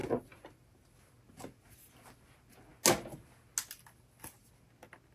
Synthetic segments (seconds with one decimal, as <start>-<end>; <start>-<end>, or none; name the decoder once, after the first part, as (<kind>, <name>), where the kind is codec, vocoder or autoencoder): none